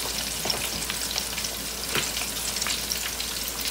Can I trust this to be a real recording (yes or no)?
yes